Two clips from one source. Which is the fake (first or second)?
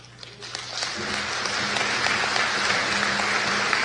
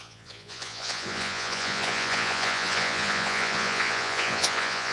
second